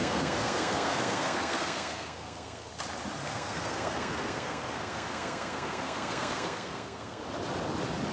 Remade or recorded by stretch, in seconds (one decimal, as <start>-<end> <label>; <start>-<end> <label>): 0.0-2.7 remade; 2.7-3.2 recorded; 3.2-7.2 remade; 7.2-8.1 recorded